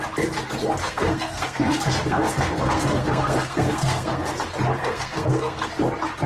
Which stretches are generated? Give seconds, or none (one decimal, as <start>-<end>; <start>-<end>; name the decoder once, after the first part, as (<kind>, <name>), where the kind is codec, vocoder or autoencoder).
0.8-4.3 (codec, SNAC); 4.8-5.7